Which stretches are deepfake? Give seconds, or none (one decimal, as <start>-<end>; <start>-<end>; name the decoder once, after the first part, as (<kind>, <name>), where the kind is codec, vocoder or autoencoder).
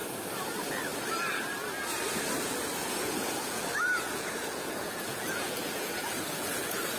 2.4-7.0 (vocoder, Vocos)